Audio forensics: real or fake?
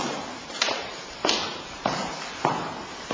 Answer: fake